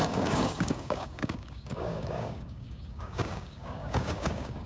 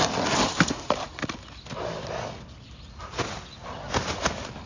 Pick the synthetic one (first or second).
first